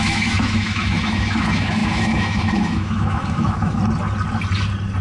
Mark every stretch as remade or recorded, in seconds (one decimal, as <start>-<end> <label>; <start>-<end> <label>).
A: 0.0-3.8 remade; 3.8-5.0 recorded